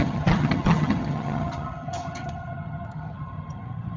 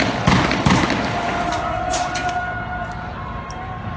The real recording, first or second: second